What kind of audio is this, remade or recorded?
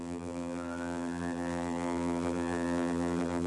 remade